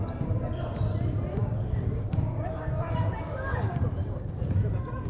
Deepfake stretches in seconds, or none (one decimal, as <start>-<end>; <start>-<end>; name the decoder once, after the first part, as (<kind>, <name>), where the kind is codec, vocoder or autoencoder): 1.3-4.4 (codec, DAC)